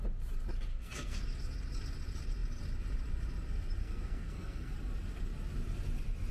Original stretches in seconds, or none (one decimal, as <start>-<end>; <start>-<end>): 0.0-0.7; 1.2-3.8; 4.7-6.3